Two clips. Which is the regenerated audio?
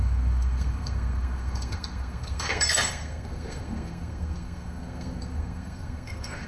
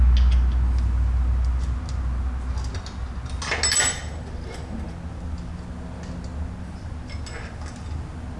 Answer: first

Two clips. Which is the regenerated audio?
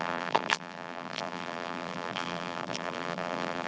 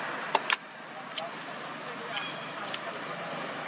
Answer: first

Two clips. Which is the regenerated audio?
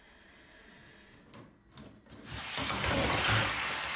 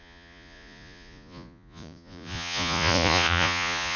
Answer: second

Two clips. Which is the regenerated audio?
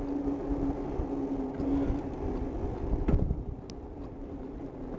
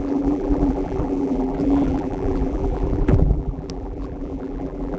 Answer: second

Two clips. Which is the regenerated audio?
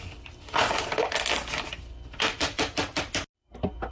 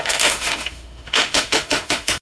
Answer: second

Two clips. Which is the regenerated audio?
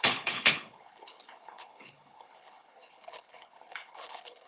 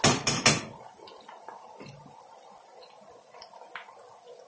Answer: first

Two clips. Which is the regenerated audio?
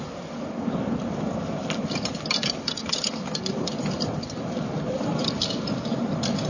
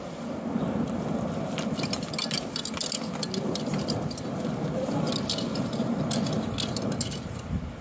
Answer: first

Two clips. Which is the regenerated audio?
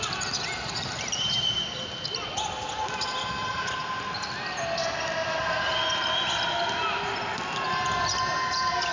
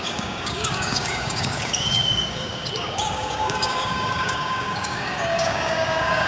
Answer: second